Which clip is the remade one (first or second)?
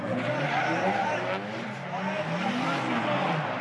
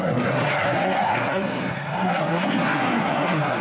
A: second